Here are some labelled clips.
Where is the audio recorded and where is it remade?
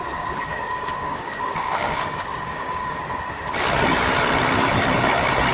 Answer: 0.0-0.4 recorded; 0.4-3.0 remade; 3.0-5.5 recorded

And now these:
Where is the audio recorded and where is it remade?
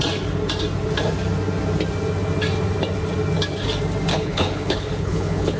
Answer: 0.0-4.1 recorded; 4.1-5.6 remade